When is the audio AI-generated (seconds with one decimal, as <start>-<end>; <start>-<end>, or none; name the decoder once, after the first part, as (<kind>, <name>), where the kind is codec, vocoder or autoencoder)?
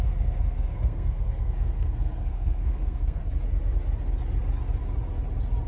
0.0-3.2 (codec, SNAC)